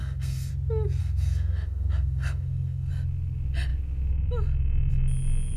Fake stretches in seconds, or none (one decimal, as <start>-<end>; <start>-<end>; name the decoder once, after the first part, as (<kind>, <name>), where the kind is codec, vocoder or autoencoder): 0.0-0.5 (codec, SNAC); 1.0-2.9